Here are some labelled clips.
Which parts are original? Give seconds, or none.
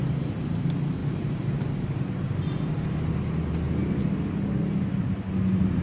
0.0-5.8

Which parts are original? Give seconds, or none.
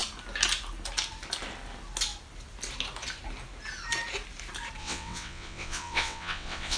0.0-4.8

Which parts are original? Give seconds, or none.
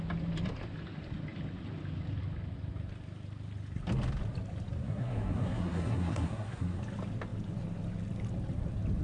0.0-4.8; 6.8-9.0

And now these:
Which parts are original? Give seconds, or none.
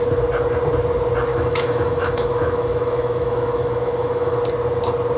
0.0-1.3; 4.4-5.2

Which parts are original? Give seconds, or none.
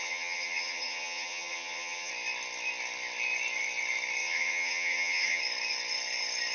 2.1-4.2; 5.4-6.5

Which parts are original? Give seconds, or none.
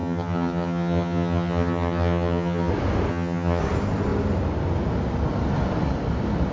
2.7-3.1; 3.6-6.5